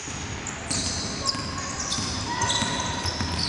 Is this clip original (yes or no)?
yes